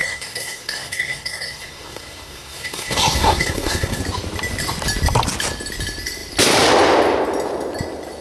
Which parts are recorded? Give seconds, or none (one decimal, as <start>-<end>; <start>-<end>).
4.0-8.2

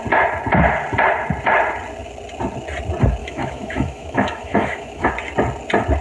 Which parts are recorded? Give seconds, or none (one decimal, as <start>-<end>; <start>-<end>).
0.0-3.2; 5.1-6.0